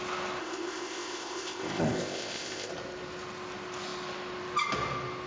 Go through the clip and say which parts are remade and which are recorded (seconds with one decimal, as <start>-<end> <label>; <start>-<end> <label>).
0.0-0.4 recorded; 0.4-2.7 remade; 2.7-5.3 recorded